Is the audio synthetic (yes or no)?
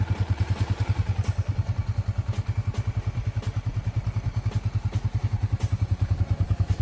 no